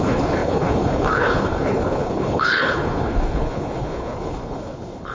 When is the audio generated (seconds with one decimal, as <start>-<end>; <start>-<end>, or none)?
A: 0.0-5.1